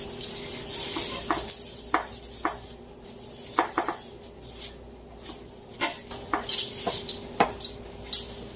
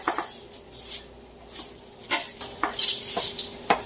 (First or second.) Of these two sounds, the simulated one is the second